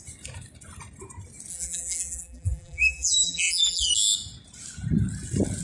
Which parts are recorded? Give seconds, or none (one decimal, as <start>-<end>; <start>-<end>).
0.0-1.5; 3.9-5.6